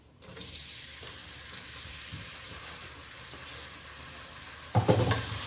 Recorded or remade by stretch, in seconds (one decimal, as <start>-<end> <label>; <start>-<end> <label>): 0.0-5.5 remade